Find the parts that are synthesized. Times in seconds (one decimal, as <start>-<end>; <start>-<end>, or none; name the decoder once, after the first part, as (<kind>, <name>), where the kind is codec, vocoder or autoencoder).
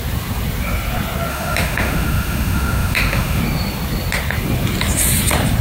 1.3-3.4 (autoencoder, DAC-VAE)